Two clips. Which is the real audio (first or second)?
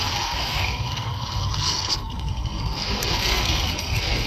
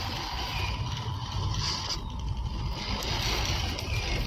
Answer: second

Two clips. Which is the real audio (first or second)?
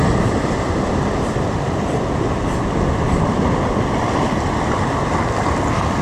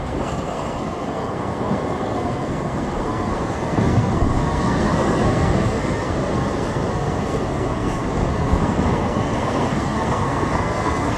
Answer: first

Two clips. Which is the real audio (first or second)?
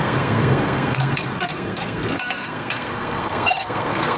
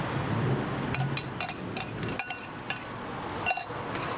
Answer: second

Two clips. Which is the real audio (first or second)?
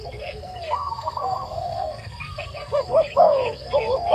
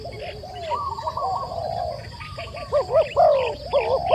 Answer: second